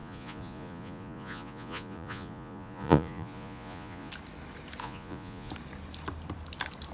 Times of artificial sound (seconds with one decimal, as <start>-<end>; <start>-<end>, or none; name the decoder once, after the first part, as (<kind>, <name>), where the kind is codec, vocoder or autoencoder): 0.0-4.1 (vocoder, Vocos); 4.8-5.5